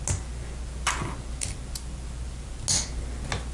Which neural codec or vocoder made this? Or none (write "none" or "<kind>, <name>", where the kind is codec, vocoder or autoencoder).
none